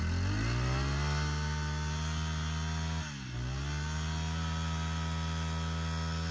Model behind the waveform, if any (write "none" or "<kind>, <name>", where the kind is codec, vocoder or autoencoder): none